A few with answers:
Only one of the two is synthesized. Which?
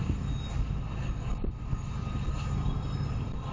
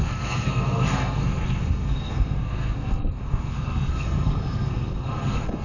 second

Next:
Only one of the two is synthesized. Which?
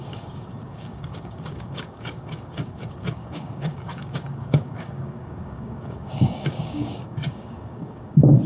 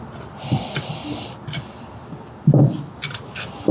first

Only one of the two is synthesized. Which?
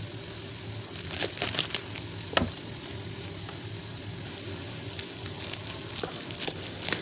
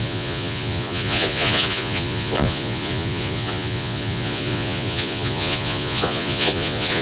second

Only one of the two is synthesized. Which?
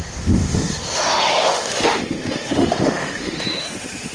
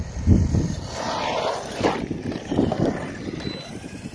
first